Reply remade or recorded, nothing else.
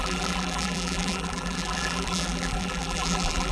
remade